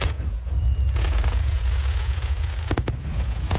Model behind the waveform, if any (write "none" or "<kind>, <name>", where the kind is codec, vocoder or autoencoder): vocoder, Vocos